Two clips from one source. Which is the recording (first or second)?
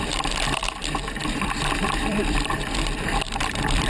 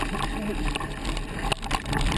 second